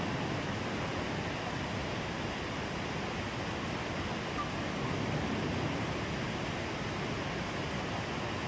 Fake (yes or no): no